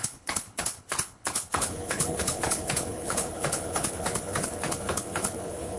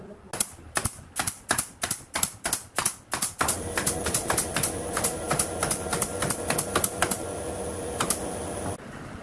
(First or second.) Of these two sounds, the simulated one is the first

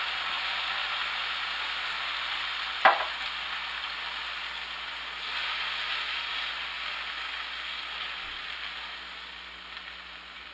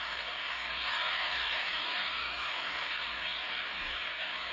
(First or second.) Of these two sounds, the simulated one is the second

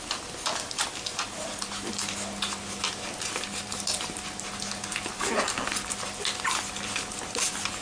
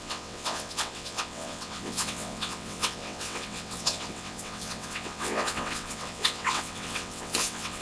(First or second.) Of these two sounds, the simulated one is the second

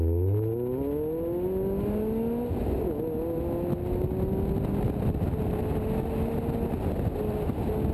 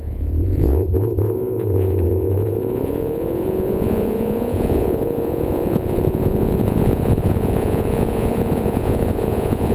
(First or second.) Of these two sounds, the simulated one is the second